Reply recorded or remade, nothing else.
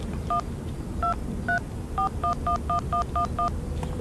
recorded